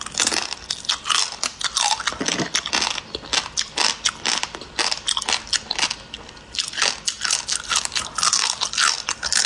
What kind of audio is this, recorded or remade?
recorded